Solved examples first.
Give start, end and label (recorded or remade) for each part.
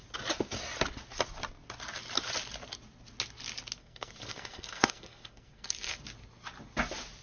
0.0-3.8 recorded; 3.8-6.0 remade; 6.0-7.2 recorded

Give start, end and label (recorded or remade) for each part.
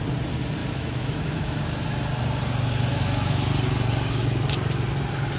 0.0-0.6 recorded; 0.6-1.6 remade; 1.6-2.9 recorded; 2.9-3.5 remade; 3.5-5.4 recorded